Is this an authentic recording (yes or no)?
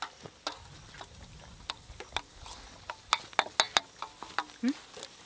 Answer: yes